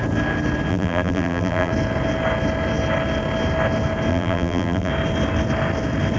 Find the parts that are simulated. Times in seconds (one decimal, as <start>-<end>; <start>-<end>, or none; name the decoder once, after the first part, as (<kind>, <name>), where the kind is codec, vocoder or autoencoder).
0.7-1.7 (vocoder, BigVGAN v2); 4.1-4.9